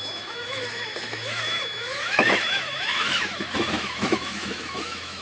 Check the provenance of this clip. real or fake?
fake